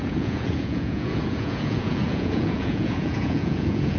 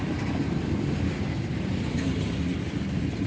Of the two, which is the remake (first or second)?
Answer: first